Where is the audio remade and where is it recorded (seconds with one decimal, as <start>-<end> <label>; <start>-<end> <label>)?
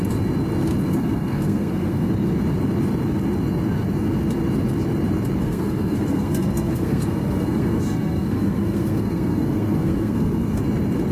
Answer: 0.0-0.9 recorded; 0.9-2.1 remade; 2.1-5.4 recorded; 5.4-10.6 remade; 10.6-11.1 recorded